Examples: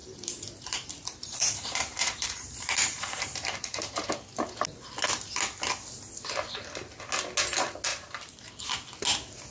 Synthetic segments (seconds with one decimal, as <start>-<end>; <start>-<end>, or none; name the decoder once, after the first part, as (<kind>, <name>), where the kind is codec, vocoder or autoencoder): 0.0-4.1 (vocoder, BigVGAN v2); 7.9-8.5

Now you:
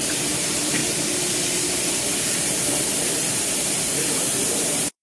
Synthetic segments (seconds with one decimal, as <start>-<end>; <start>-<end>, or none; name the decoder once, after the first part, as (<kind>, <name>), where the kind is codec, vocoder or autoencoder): 0.0-0.8 (vocoder, BigVGAN v2); 3.3-5.0

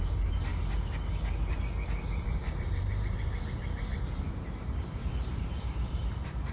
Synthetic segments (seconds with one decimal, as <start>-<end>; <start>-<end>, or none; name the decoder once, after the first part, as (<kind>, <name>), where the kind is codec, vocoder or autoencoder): 0.0-0.5 (vocoder, BigVGAN v2); 1.5-6.5

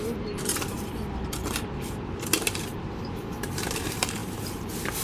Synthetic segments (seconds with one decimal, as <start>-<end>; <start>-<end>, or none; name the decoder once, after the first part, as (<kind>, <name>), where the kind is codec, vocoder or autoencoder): 0.0-1.0 (vocoder, BigVGAN v2); 2.2-5.0

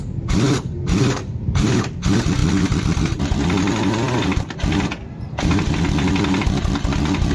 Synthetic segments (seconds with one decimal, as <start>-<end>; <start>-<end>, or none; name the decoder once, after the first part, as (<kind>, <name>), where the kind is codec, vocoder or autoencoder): 1.2-1.8 (vocoder, BigVGAN v2); 2.4-5.7